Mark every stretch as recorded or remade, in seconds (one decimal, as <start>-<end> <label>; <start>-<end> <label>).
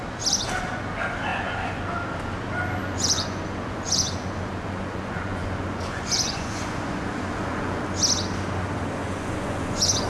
0.0-1.3 recorded; 1.3-1.8 remade; 1.8-2.8 recorded; 2.8-7.8 remade; 7.8-9.0 recorded; 9.0-10.1 remade